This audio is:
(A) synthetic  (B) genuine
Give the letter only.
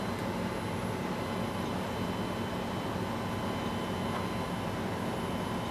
B